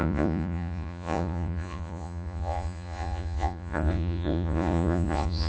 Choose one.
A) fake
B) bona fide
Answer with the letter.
A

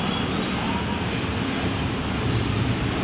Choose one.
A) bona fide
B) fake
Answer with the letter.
A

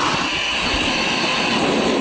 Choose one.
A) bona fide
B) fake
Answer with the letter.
A